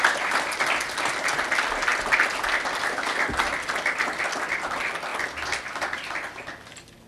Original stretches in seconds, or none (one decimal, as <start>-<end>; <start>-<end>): 0.0-7.1